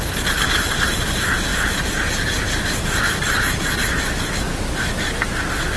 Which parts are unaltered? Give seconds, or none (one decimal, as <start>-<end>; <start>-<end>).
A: 0.0-5.8